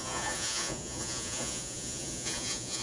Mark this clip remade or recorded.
remade